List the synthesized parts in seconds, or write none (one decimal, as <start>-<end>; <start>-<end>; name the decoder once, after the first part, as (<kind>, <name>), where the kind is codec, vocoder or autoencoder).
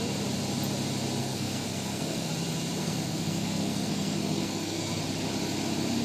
1.2-2.3 (codec, SNAC); 2.8-5.0